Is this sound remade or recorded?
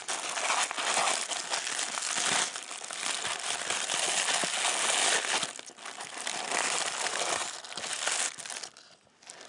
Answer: recorded